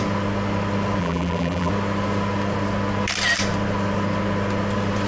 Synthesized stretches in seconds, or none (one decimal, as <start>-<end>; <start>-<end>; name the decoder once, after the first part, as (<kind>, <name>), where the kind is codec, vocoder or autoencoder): 1.0-1.7 (vocoder, BigVGAN v2)